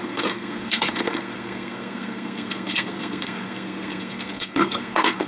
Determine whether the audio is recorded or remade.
remade